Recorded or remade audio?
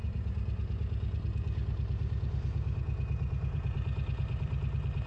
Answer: remade